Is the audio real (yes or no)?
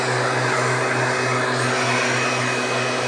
yes